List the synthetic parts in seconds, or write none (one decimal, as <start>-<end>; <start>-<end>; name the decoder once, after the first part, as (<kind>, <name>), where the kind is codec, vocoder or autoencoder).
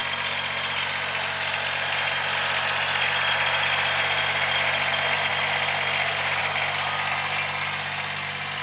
none